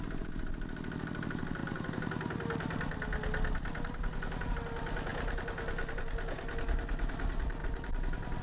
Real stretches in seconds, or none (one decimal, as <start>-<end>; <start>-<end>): 0.0-7.6